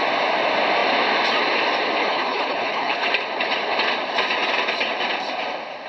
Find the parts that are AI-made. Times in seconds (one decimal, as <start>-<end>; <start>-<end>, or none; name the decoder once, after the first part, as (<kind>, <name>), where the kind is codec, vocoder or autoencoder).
2.0-3.1 (codec, HILCodec)